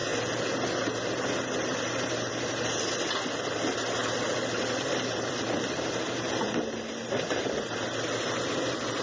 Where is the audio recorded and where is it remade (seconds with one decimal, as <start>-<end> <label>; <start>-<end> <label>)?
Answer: 0.0-4.0 recorded; 4.0-5.7 remade; 5.7-9.0 recorded